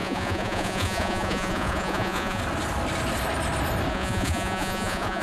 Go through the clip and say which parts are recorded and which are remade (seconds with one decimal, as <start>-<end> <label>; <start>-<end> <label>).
0.0-2.4 remade; 2.4-3.9 recorded; 3.9-5.2 remade

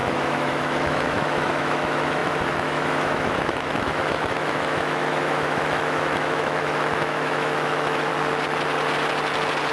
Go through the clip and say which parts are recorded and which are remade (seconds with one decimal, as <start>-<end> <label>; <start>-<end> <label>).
0.0-8.1 remade; 8.1-9.7 recorded

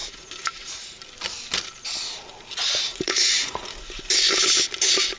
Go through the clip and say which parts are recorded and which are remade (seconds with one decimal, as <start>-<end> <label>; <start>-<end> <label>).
0.0-1.0 remade; 1.0-2.9 recorded; 2.9-3.6 remade; 3.6-5.2 recorded

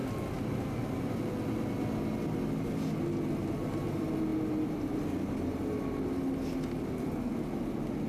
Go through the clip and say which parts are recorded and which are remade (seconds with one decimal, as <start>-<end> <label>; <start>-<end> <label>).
0.0-8.1 recorded

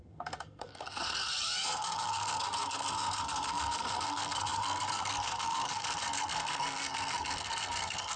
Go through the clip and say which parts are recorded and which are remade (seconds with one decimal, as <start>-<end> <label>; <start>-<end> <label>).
0.0-8.2 remade

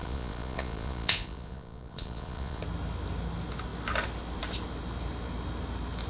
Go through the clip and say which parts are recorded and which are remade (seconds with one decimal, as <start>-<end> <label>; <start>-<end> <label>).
0.0-2.6 remade; 2.6-6.1 recorded